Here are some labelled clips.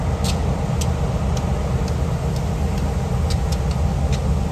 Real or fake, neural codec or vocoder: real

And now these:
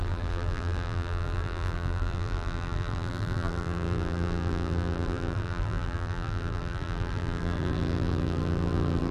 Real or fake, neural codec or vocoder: fake, vocoder, BigVGAN v2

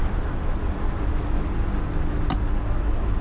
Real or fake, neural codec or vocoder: real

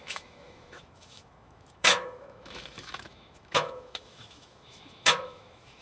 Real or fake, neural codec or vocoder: fake, autoencoder, DAC-VAE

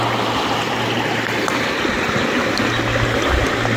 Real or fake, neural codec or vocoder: real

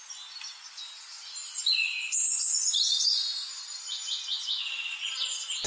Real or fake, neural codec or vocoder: real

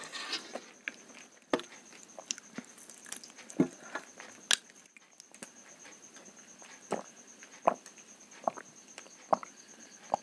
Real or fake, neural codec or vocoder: real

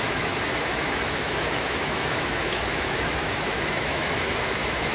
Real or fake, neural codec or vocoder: fake, autoencoder, DAC-VAE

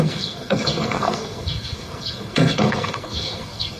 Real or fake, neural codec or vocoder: fake, codec, SNAC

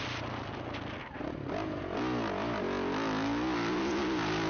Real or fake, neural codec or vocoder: real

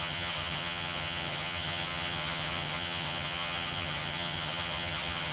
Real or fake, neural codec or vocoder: fake, vocoder, HiFi-GAN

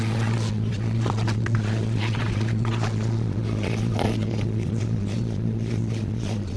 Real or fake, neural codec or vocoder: fake, vocoder, Vocos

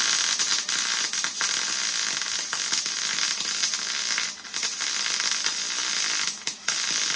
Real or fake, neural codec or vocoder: real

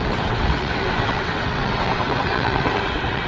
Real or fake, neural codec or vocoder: fake, vocoder, WaveNeXt